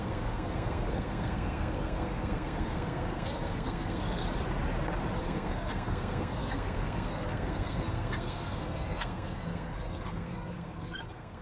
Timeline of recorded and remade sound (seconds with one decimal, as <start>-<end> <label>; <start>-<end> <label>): 0.0-4.2 remade; 4.2-5.2 recorded; 5.2-11.4 remade